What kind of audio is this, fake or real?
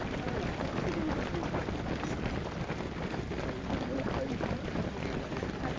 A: real